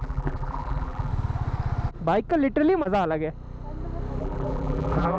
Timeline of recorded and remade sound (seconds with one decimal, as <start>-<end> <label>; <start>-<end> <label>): 0.0-1.1 remade; 1.1-4.2 recorded; 4.2-5.2 remade